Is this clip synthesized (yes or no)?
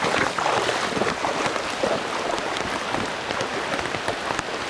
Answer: no